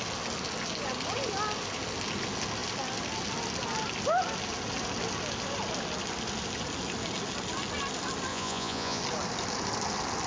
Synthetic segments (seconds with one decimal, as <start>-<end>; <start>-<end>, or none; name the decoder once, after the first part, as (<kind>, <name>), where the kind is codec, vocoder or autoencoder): 8.3-9.0 (vocoder, Vocos)